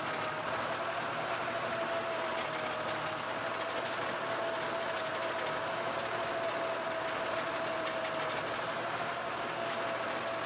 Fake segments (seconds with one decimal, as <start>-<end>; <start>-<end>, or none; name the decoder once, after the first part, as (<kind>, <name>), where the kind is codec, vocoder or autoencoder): none